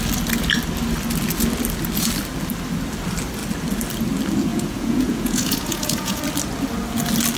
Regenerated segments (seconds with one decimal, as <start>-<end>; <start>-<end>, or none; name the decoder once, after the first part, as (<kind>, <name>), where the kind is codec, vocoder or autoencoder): 4.5-6.2 (vocoder, Vocos)